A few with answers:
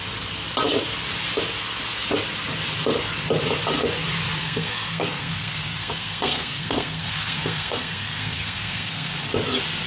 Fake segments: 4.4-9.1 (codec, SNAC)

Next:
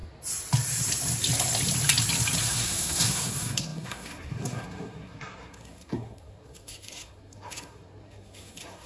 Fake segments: 2.4-8.9 (codec, SNAC)

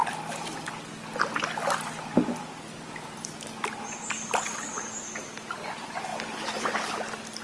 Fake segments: none

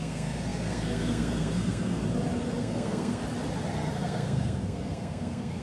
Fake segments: 0.0-2.0 (codec, SNAC); 2.6-3.2; 3.9-5.6

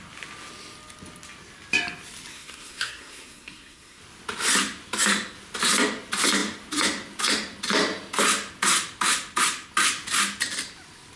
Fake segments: 2.3-4.0 (codec, SNAC)

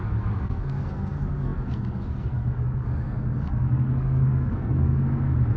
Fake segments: 0.0-5.6 (codec, SNAC)

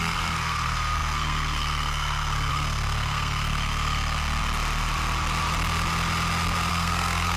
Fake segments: 0.0-4.4 (codec, SNAC); 6.7-7.4